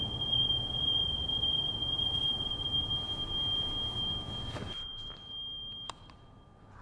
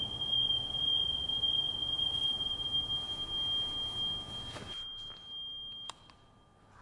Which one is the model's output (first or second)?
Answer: first